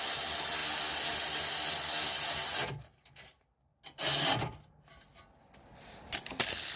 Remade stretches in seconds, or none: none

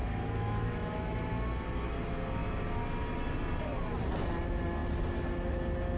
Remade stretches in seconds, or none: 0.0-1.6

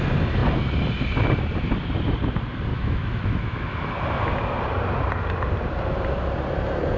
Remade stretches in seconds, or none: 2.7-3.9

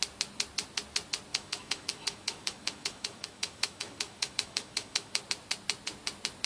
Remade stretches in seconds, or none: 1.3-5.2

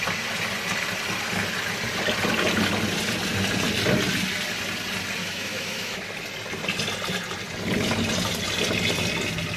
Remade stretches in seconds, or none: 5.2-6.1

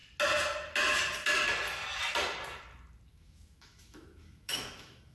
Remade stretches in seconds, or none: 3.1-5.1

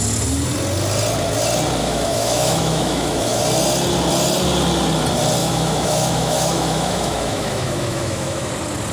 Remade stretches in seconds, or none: 1.8-3.4; 5.4-8.5

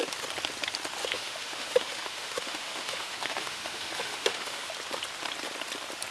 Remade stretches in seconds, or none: 1.0-4.7